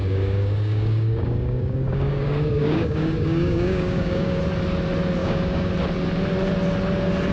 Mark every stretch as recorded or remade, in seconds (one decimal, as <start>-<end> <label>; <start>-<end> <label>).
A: 0.0-4.4 remade; 4.4-5.2 recorded; 5.2-5.7 remade; 5.7-7.3 recorded